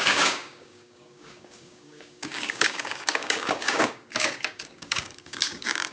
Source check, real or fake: fake